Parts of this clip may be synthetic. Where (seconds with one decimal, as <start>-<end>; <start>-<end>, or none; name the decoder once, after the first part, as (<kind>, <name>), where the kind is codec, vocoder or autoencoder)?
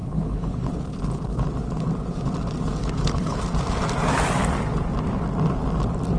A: 0.0-0.7 (codec, HILCodec); 2.8-3.4